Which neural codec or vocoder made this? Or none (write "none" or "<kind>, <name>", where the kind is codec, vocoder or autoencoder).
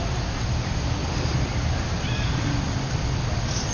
none